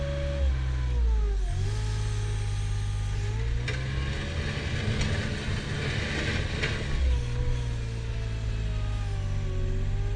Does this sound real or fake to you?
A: real